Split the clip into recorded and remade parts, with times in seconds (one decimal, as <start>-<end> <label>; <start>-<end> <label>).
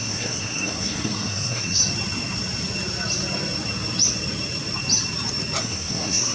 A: 0.0-1.8 remade; 1.8-5.6 recorded; 5.6-6.3 remade